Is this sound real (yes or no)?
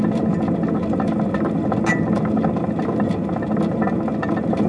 yes